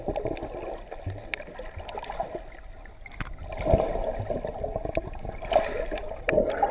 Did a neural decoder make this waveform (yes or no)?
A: no